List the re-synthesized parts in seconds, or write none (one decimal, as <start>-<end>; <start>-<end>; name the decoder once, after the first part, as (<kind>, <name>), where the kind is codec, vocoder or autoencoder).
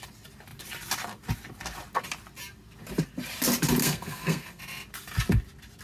3.8-4.6 (codec, SNAC)